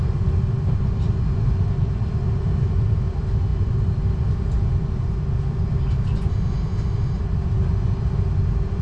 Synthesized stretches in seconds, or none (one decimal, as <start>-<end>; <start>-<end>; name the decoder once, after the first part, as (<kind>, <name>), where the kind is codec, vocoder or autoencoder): 6.3-7.2 (autoencoder, DAC-VAE)